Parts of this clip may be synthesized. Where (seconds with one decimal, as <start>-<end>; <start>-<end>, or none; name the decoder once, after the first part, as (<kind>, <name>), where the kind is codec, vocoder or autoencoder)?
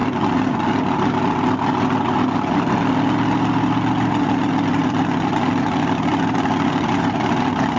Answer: none